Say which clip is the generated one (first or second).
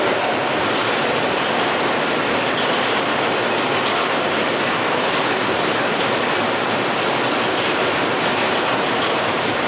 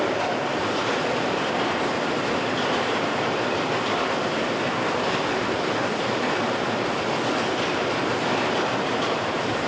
second